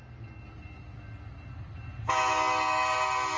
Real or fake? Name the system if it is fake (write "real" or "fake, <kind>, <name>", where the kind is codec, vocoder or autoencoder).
real